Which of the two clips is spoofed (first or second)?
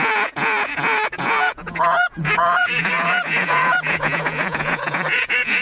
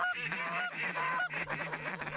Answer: first